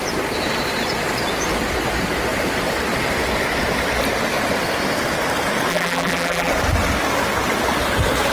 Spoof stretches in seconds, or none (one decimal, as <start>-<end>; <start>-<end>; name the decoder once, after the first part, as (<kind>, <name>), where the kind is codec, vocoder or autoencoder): 5.7-6.5 (vocoder, BigVGAN v2)